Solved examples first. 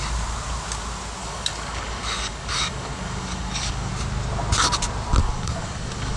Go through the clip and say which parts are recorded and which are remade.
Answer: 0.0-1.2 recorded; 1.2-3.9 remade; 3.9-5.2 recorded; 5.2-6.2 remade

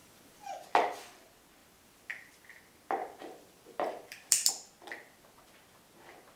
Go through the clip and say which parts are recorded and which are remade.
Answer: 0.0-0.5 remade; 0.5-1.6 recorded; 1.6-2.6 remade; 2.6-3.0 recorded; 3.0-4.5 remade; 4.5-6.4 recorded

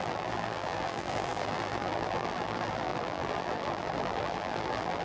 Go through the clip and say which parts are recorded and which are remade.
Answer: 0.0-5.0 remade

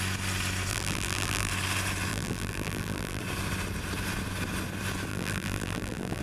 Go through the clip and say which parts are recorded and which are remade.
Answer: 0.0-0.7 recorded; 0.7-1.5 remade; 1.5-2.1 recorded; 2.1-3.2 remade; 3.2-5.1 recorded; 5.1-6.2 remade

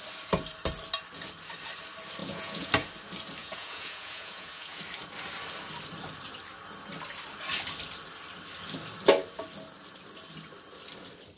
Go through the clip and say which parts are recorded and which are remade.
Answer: 0.0-2.2 recorded; 2.2-2.7 remade; 2.7-3.4 recorded; 3.4-4.8 remade; 4.8-11.4 recorded